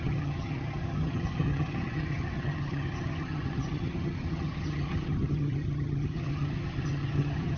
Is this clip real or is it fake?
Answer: fake